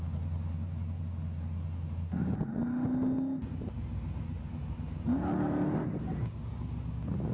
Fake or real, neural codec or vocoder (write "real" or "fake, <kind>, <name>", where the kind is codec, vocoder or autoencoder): real